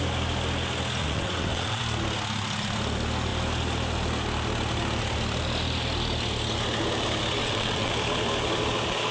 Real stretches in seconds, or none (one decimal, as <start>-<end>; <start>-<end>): 0.0-1.0; 1.8-7.4; 7.9-9.1